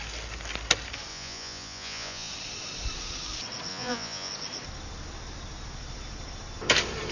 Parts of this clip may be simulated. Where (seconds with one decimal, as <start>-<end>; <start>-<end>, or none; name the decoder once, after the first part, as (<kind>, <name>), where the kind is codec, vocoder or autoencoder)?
1.1-2.3 (vocoder, Vocos); 3.7-4.3